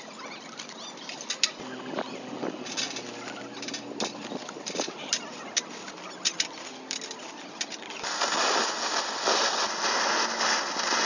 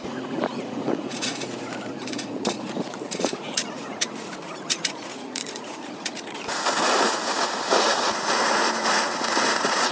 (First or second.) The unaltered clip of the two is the first